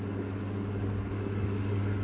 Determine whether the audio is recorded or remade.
remade